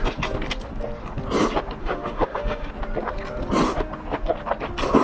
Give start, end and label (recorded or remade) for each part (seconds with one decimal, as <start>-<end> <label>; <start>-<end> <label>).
0.0-1.8 recorded; 1.8-2.7 remade; 2.7-5.0 recorded